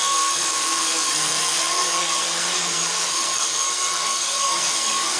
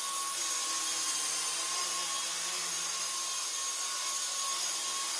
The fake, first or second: first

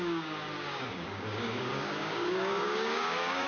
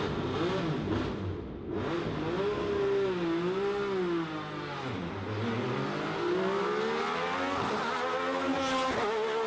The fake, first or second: first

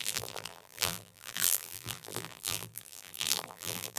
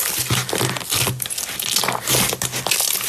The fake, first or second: first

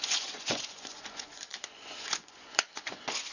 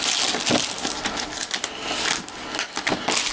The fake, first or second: first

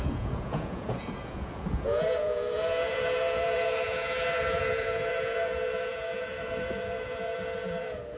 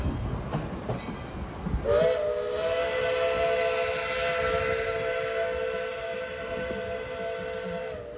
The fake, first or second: first